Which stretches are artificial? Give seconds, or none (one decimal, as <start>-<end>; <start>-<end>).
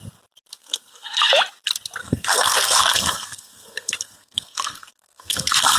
0.6-1.3; 2.0-5.8